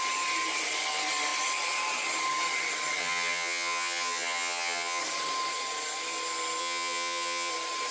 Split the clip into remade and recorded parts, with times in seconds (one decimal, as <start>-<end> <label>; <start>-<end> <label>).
0.0-3.0 recorded; 3.0-5.0 remade; 5.0-6.6 recorded; 6.6-7.5 remade; 7.5-7.9 recorded